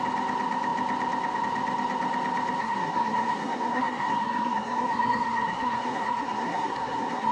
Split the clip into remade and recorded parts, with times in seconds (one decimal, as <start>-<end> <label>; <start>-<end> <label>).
0.0-2.6 recorded; 2.6-7.3 remade